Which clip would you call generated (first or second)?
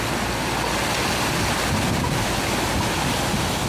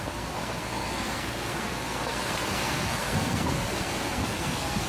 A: second